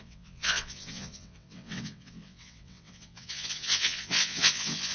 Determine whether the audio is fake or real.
fake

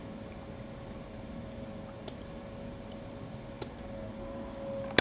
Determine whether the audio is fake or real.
real